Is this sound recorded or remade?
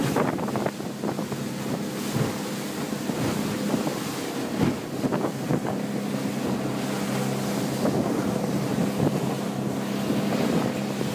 recorded